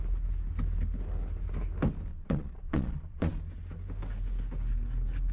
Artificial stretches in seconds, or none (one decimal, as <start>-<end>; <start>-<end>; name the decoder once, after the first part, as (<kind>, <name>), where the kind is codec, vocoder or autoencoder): 2.1-3.3 (vocoder, Vocos)